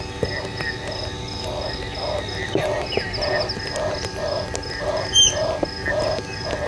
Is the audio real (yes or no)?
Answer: yes